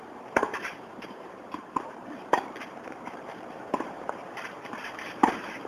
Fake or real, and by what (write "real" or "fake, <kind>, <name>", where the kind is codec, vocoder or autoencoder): fake, vocoder, BigVGAN v2